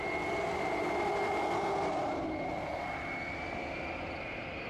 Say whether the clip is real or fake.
real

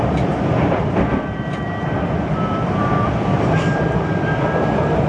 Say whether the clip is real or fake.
fake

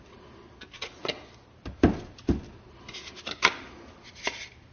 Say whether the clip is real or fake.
real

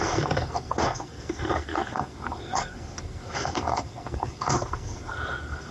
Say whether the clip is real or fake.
fake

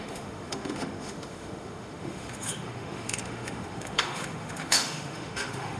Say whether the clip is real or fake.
fake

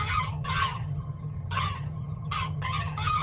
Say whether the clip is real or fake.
fake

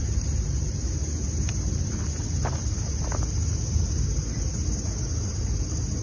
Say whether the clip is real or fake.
real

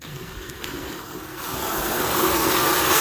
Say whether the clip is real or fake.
fake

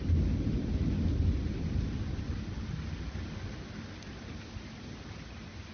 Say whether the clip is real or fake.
real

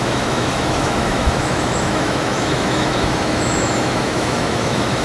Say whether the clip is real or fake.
fake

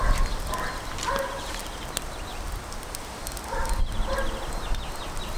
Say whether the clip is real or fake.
real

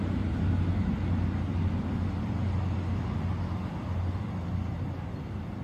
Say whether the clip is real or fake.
real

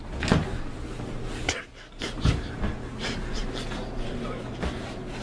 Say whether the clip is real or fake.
real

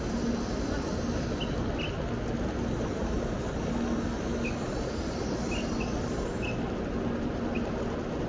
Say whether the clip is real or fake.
real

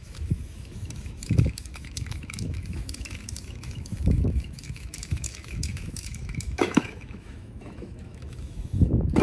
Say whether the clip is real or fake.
fake